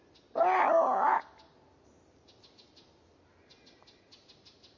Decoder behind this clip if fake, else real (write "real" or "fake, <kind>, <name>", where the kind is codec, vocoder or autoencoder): real